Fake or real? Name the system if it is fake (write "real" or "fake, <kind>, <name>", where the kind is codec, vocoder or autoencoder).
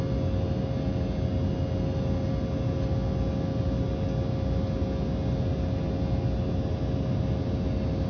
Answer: real